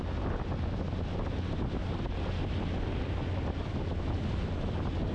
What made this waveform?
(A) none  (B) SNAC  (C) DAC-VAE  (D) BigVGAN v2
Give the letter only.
A